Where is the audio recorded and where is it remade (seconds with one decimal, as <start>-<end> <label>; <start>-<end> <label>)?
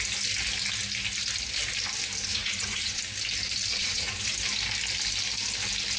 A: 0.0-2.3 recorded; 2.3-3.0 remade; 3.0-3.8 recorded; 3.8-4.3 remade; 4.3-6.0 recorded